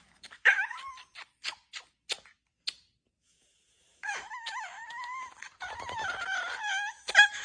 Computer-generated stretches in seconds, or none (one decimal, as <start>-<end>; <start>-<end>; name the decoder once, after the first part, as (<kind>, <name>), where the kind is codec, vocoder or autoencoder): 0.0-0.7 (autoencoder, DAC-VAE); 3.2-4.8; 6.9-7.4